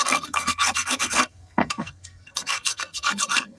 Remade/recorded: remade